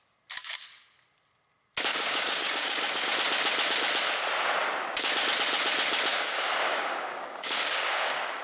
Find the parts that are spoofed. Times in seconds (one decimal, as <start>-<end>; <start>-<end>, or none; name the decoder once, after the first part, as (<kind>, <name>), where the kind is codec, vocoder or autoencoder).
1.9-3.1 (codec, DAC); 6.1-8.4

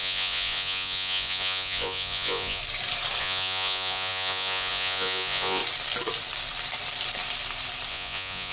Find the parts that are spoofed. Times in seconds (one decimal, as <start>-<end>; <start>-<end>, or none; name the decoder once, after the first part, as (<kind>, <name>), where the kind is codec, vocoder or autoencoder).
0.0-2.6 (vocoder, Vocos); 3.2-5.6; 7.9-8.5

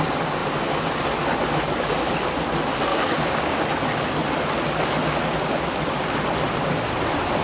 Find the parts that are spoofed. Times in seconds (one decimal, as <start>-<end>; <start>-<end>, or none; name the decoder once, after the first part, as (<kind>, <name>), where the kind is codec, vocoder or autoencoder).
2.9-3.6 (codec, DAC)

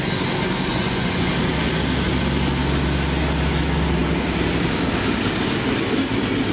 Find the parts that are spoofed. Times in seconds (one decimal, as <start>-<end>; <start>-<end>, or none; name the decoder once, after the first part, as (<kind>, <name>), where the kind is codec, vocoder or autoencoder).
0.7-1.3 (vocoder, Vocos)